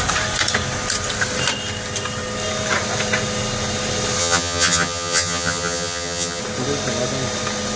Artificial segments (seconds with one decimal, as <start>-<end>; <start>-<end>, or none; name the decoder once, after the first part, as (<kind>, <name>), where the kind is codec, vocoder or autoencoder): 4.2-6.4 (vocoder, HiFi-GAN)